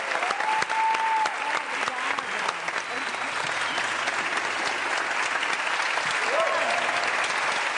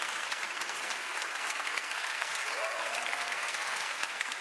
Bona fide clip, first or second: first